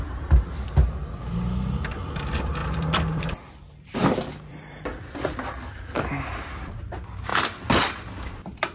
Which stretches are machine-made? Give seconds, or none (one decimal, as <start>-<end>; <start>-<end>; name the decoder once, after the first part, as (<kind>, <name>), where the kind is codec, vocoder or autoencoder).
2.6-5.8 (vocoder, BigVGAN v2)